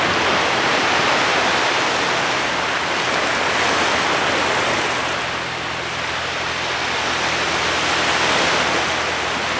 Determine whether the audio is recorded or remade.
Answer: recorded